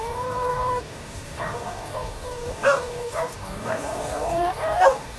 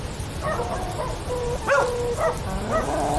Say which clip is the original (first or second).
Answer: second